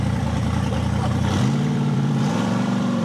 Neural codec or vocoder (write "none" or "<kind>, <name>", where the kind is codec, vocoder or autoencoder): vocoder, BigVGAN v2